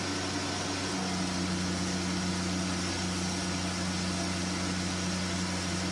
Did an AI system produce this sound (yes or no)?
no